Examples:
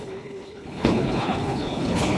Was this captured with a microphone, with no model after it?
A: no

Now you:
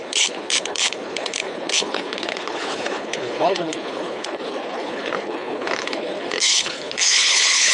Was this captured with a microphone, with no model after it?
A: no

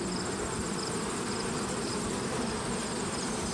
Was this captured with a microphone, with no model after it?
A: yes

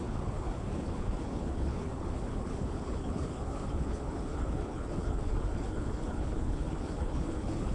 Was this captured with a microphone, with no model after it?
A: no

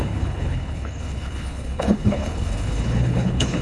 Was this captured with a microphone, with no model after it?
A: no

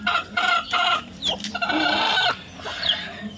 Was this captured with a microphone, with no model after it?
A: yes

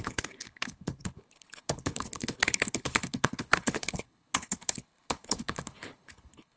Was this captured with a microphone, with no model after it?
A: no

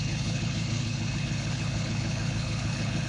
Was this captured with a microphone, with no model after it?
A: no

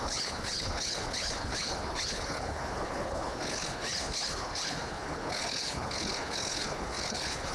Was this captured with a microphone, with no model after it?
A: no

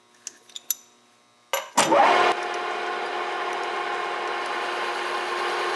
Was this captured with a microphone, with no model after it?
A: yes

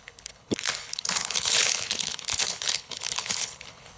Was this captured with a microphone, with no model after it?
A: no